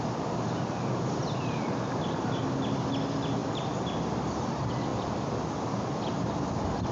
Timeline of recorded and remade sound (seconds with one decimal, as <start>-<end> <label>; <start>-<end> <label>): 0.0-6.9 recorded